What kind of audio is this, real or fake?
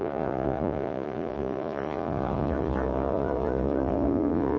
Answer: fake